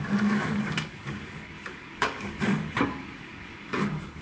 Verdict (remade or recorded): remade